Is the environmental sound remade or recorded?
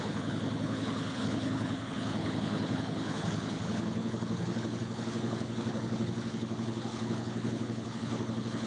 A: remade